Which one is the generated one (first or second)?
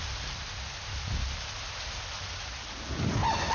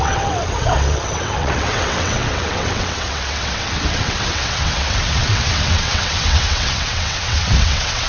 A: second